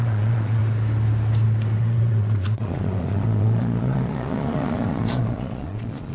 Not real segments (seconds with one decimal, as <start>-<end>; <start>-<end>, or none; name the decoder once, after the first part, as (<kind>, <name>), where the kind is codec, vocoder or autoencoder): 0.0-0.6 (vocoder, Vocos); 1.8-6.1